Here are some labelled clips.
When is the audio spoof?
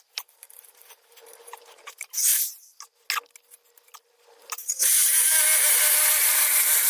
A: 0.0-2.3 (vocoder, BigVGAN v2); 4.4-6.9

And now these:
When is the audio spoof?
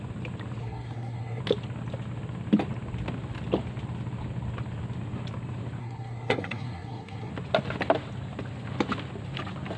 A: 0.6-1.4 (codec, SNAC); 5.8-7.3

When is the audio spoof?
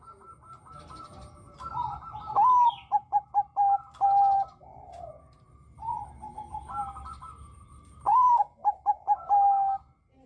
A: 4.7-8.3 (vocoder, BigVGAN v2)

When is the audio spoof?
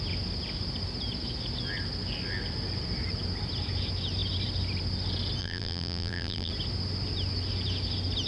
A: 5.4-6.5 (vocoder, BigVGAN v2)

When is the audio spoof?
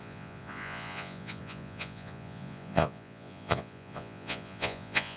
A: 0.0-5.2 (vocoder, Vocos)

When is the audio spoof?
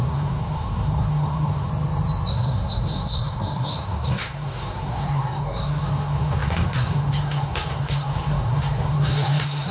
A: 0.0-1.7 (codec, SNAC); 2.3-9.7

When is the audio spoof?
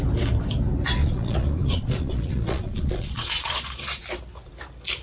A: 1.0-4.0 (vocoder, Vocos)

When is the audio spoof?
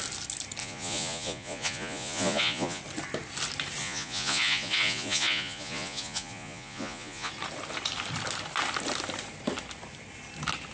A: 0.6-2.8 (vocoder, Vocos); 3.8-7.3